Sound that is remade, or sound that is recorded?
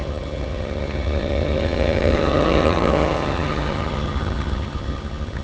remade